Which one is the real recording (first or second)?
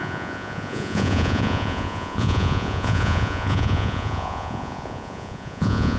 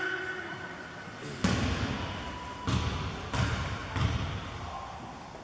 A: second